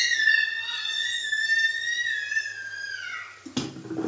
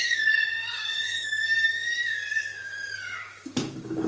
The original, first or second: first